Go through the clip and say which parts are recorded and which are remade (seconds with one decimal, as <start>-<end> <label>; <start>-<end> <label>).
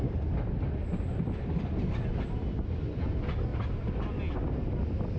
0.0-5.2 recorded